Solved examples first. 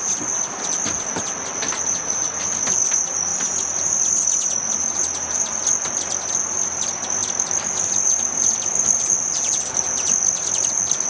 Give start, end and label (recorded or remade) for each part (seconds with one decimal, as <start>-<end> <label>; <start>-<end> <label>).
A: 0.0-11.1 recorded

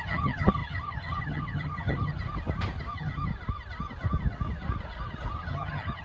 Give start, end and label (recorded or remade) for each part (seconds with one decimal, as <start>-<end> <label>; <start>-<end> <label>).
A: 0.0-2.2 remade; 2.2-2.9 recorded; 2.9-3.3 remade; 3.3-5.4 recorded; 5.4-6.0 remade

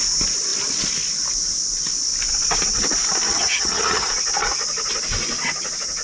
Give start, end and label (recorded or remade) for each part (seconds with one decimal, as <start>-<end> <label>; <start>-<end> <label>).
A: 0.0-3.3 recorded; 3.3-4.1 remade; 4.1-6.0 recorded